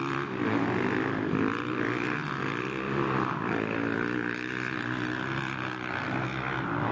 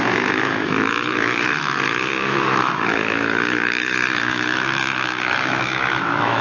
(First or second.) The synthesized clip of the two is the second